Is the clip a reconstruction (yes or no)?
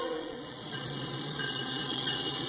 yes